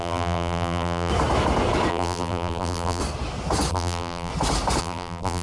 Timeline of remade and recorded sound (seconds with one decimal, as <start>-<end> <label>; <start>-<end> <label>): 0.0-1.1 remade; 1.1-1.9 recorded; 1.9-3.0 remade; 3.0-3.7 recorded; 3.7-4.3 remade; 4.3-4.8 recorded; 4.8-5.4 remade